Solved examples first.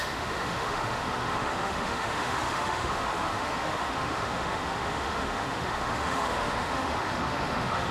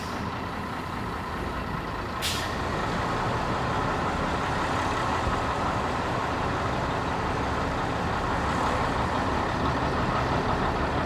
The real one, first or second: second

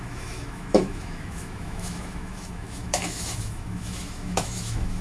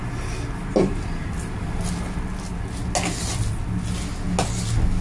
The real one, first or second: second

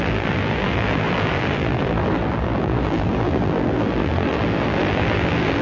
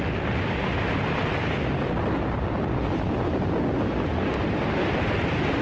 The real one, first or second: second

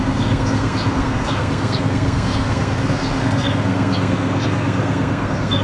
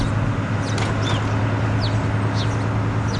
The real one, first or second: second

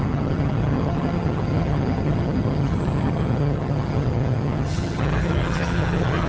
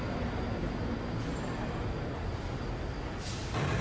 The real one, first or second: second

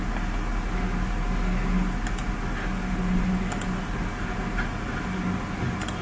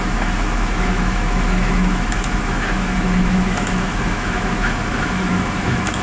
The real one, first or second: first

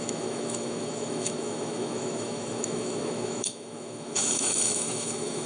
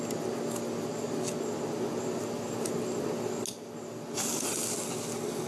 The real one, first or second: second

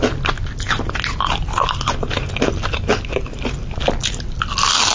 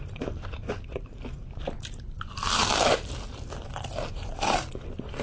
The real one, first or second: first